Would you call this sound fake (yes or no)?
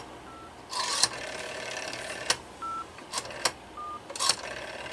no